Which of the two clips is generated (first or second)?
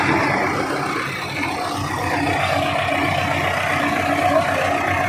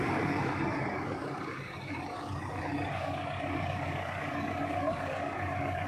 second